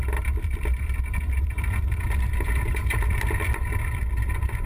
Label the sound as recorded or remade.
remade